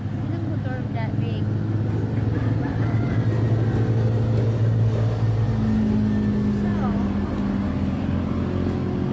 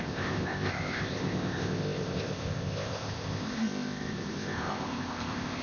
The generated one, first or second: second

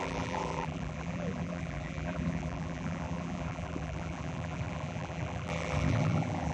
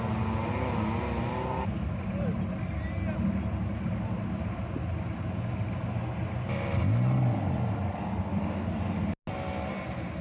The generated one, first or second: first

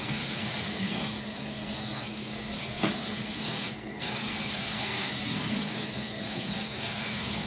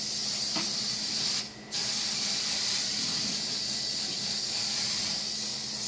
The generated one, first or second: first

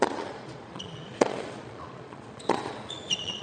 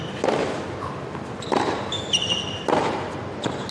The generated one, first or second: first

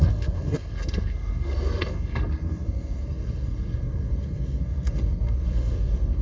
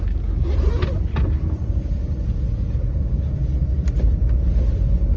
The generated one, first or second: first